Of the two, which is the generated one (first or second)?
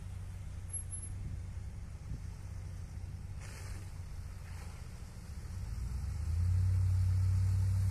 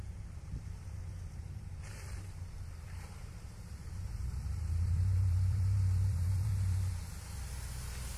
second